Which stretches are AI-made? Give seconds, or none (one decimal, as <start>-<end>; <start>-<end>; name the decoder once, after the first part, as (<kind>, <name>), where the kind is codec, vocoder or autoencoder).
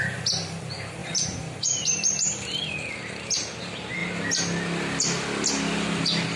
1.0-2.7 (vocoder, BigVGAN v2)